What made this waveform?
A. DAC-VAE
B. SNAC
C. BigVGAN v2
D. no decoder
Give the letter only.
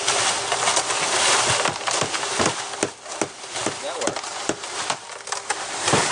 C